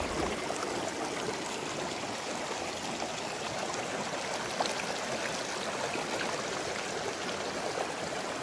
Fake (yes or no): no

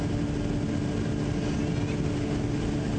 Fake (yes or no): no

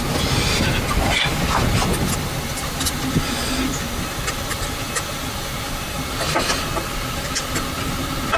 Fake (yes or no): no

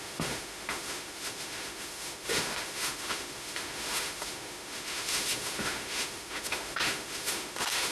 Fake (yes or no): yes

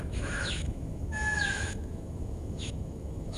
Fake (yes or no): yes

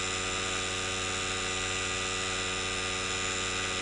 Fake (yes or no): no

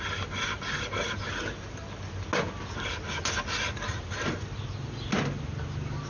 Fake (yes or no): no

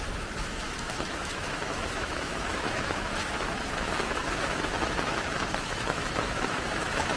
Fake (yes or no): yes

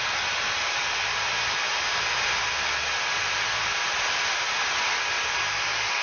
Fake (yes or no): no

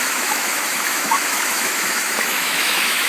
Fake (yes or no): yes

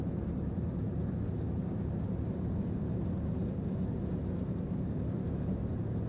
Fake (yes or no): no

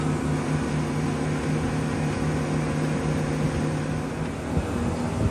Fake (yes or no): no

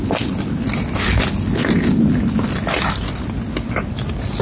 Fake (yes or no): no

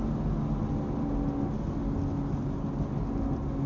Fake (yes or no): no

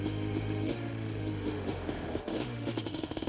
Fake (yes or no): yes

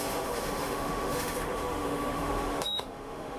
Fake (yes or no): yes